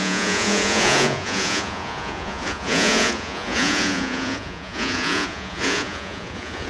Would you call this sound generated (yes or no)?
yes